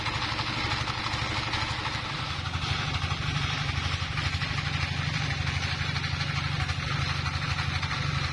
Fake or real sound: real